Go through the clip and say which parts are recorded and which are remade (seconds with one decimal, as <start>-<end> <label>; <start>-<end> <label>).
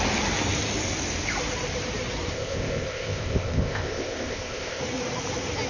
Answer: 0.0-2.3 recorded; 2.3-4.8 remade; 4.8-5.7 recorded